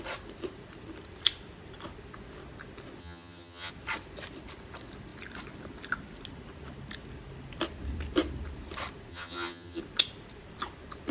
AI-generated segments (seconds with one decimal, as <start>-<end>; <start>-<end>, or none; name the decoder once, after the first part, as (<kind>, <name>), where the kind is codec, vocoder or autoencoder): 3.0-3.7 (vocoder, HiFi-GAN); 9.1-9.8